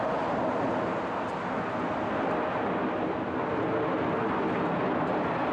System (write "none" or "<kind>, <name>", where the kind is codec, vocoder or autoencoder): none